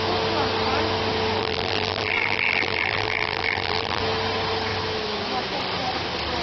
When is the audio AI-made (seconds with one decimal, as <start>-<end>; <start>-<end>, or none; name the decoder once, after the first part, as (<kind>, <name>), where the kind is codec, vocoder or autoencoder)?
1.4-4.0 (vocoder, BigVGAN v2)